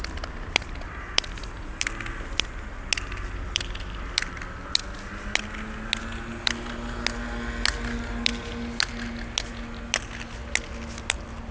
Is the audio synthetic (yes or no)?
no